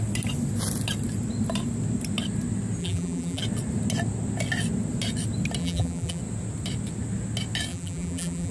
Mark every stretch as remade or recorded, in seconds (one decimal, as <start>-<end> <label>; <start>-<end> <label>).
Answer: 0.0-2.8 recorded; 2.8-3.4 remade; 3.4-5.6 recorded; 5.6-6.2 remade; 6.2-7.7 recorded; 7.7-8.5 remade